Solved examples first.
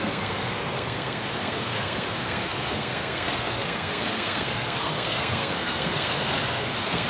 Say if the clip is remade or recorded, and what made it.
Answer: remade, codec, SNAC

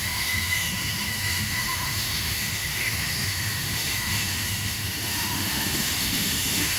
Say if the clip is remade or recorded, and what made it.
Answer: remade, autoencoder, DAC-VAE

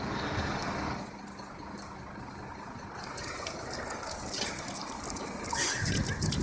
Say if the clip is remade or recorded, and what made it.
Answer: recorded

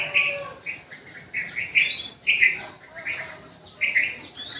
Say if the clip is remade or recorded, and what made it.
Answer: recorded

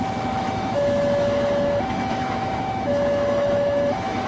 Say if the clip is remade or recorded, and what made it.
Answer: remade, autoencoder, DAC-VAE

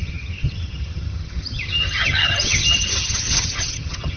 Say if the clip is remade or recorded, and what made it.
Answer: remade, vocoder, HiFi-GAN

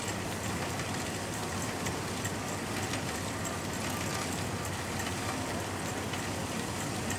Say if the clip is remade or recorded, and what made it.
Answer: recorded